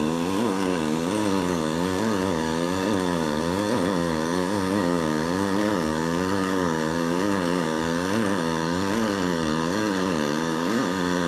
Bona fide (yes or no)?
no